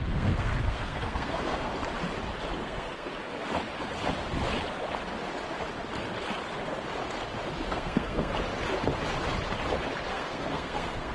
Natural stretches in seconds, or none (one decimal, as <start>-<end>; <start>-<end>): 1.7-2.6; 3.1-7.7; 8.3-10.1